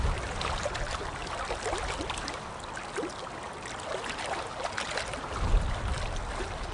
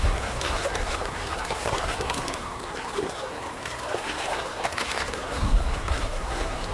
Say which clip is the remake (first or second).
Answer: second